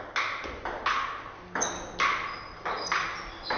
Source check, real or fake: real